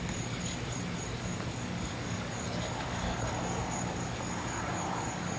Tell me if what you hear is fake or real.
fake